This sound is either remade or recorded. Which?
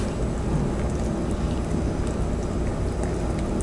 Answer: recorded